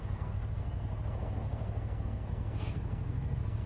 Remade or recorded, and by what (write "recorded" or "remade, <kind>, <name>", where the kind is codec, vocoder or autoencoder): remade, codec, SNAC